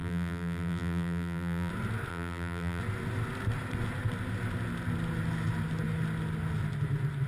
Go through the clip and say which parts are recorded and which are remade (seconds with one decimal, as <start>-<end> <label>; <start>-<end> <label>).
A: 0.0-1.7 remade; 1.7-2.1 recorded; 2.1-2.8 remade; 2.8-7.3 recorded